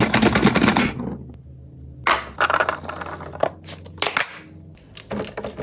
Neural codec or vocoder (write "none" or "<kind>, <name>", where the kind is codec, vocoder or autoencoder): none